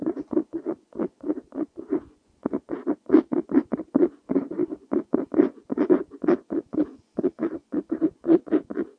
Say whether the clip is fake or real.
fake